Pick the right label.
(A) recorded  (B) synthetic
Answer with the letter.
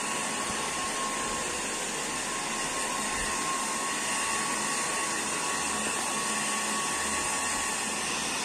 A